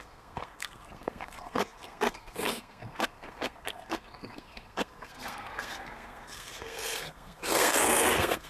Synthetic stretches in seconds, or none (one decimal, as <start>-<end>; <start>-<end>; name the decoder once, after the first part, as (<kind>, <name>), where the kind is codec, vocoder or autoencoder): 0.0-8.5 (codec, SNAC)